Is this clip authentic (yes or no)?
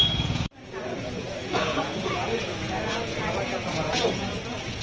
no